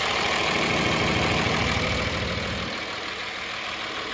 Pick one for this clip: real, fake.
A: real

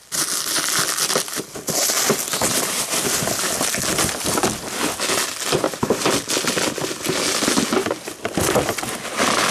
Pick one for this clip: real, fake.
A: real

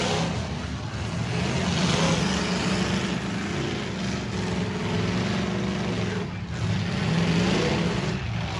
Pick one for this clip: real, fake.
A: real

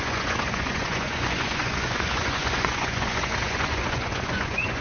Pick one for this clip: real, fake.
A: fake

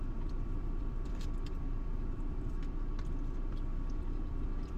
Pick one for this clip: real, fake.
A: fake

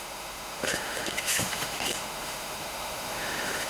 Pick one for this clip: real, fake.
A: fake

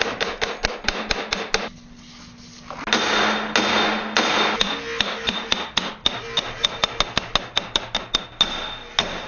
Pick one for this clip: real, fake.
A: real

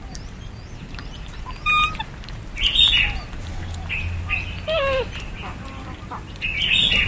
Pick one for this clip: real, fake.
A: real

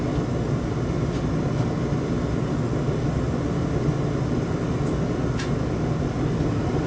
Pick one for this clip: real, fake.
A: real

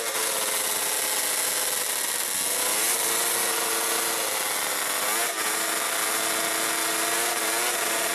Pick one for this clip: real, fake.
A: real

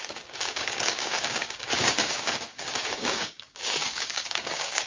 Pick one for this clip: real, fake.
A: fake